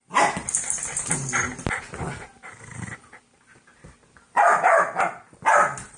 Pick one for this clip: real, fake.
real